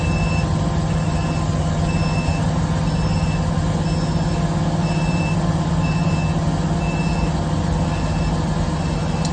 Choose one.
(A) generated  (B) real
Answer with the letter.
B